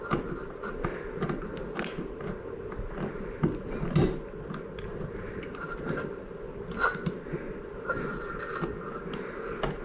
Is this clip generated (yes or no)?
no